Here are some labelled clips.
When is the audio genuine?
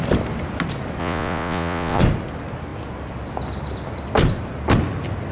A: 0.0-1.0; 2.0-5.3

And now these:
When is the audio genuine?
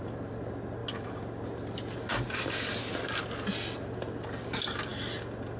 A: 0.0-5.6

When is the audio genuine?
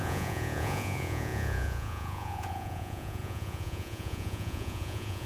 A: none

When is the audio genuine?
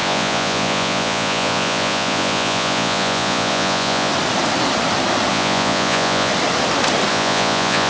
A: 4.1-5.3; 6.3-7.1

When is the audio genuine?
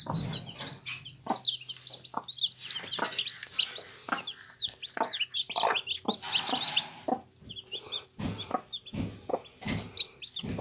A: 0.0-10.6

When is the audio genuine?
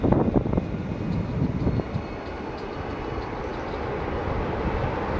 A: 0.0-5.2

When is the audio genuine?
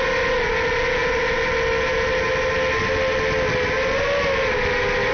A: 0.0-5.1